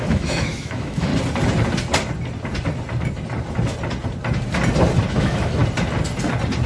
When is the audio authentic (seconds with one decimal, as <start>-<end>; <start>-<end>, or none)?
1.1-5.1; 5.6-6.7